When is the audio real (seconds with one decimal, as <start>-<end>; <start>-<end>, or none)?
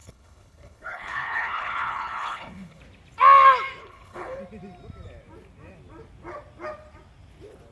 2.8-3.8; 4.4-7.7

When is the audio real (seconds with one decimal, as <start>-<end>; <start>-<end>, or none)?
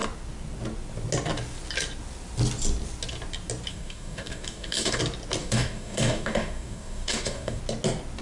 0.0-3.7; 5.0-5.4; 7.6-8.2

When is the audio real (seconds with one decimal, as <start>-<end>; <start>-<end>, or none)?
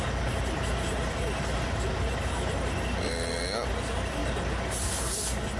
0.0-5.6